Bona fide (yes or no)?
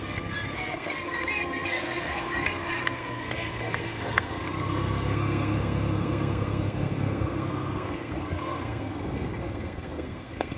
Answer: no